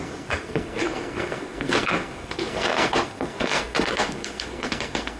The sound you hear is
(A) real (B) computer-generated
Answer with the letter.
B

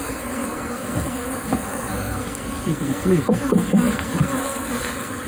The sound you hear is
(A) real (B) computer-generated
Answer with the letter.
B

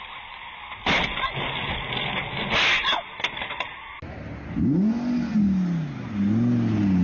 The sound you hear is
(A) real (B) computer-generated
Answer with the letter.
A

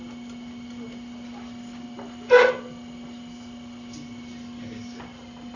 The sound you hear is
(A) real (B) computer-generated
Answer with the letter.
A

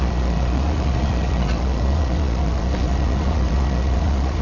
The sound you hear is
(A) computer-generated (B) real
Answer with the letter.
A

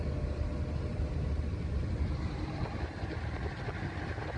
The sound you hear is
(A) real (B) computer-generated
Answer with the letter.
A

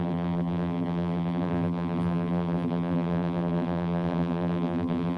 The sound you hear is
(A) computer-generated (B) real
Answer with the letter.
A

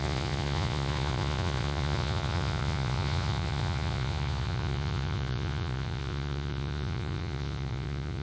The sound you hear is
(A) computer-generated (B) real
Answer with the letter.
A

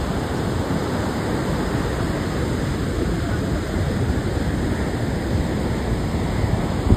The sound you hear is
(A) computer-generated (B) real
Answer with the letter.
B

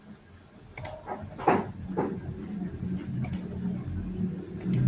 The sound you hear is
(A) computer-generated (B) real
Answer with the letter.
B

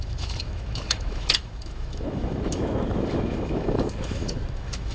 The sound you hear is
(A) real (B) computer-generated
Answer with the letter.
B